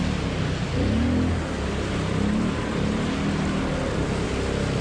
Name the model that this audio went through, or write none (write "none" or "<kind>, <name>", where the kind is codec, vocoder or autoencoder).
none